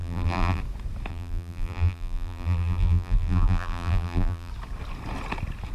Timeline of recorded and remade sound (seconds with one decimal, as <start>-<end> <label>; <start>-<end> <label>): 0.0-0.6 remade; 0.6-1.1 recorded; 1.1-4.5 remade; 4.5-5.7 recorded